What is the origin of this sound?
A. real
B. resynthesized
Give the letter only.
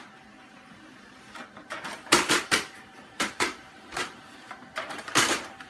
B